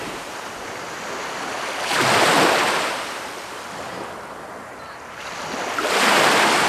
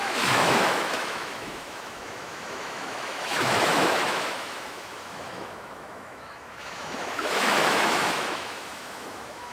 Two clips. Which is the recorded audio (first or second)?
first